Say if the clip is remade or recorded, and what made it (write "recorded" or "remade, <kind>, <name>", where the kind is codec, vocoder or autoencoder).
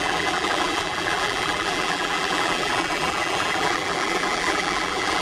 remade, vocoder, BigVGAN v2